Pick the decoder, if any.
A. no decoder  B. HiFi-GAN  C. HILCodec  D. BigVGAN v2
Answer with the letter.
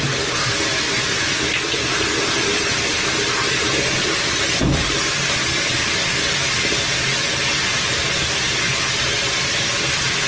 A